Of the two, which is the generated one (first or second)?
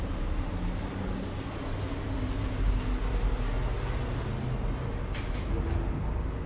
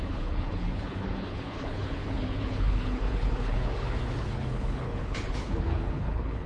second